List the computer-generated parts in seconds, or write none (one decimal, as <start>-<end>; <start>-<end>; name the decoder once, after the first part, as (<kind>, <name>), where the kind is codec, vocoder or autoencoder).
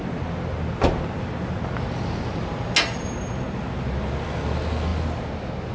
none